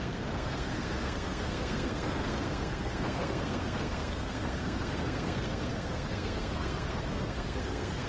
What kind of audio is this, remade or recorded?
remade